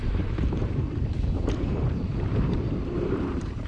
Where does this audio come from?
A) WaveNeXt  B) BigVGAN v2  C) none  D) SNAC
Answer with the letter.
B